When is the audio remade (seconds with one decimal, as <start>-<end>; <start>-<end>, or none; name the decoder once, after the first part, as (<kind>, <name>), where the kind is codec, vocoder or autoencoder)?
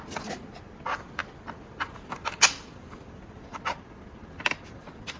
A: none